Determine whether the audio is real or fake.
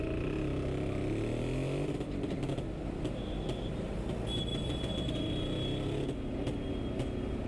real